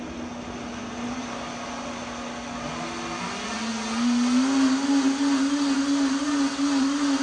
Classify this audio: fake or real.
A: real